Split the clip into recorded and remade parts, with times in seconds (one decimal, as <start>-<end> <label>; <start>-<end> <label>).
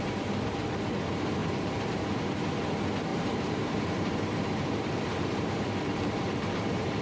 0.0-1.4 recorded; 1.4-1.9 remade; 1.9-3.1 recorded; 3.1-7.0 remade